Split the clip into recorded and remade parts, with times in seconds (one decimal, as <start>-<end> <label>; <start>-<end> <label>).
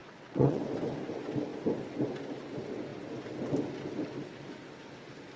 0.0-0.6 remade; 0.6-5.4 recorded